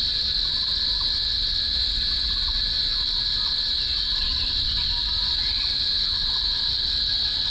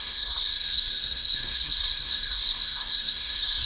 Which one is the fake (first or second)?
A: second